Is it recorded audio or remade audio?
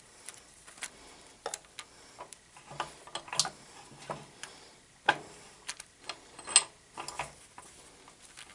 recorded